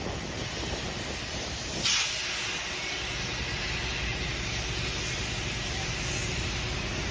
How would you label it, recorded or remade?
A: recorded